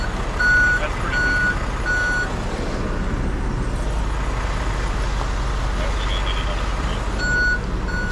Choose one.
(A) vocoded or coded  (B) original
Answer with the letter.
B